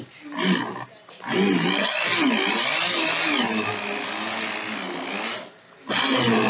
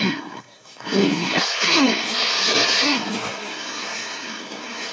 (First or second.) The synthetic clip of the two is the second